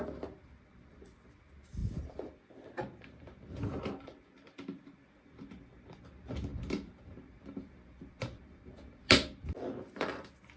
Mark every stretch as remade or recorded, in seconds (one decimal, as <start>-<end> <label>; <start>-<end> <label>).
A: 0.0-10.6 remade